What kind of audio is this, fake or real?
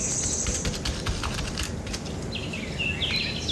real